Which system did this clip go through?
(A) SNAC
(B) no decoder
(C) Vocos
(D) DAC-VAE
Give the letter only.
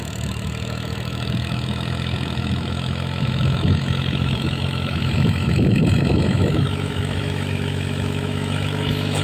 D